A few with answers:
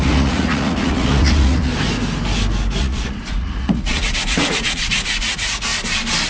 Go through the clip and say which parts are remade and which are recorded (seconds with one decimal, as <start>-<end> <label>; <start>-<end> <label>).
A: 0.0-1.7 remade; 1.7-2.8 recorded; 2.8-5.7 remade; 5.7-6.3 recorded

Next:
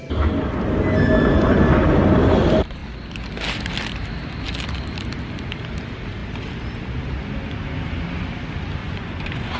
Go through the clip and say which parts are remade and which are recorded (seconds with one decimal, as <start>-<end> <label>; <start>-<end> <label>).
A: 0.0-8.8 recorded; 8.8-9.6 remade

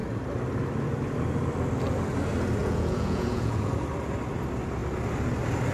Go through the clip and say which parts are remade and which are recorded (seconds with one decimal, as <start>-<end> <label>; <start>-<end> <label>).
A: 0.0-2.6 recorded; 2.6-3.7 remade; 3.7-5.7 recorded

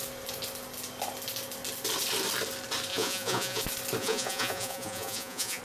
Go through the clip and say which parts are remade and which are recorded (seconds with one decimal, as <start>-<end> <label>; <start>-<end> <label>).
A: 0.0-2.9 recorded; 2.9-3.6 remade; 3.6-4.0 recorded; 4.0-5.6 remade

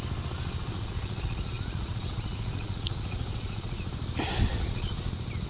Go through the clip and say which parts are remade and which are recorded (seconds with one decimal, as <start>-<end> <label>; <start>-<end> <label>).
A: 0.0-0.6 recorded; 0.6-3.9 remade; 3.9-4.5 recorded; 4.5-5.1 remade; 5.1-5.5 recorded

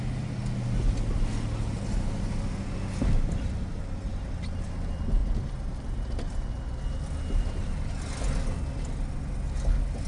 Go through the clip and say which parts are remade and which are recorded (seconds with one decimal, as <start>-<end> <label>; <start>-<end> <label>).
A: 0.0-10.1 recorded